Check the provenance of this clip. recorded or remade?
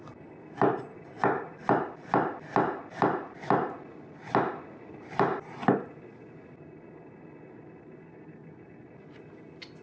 recorded